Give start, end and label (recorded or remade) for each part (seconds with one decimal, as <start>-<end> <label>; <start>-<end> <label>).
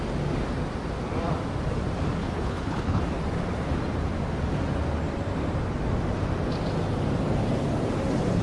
0.0-2.2 recorded; 2.2-3.0 remade; 3.0-8.4 recorded